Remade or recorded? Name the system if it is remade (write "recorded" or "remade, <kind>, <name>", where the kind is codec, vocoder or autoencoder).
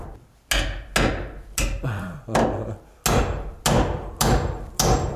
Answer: recorded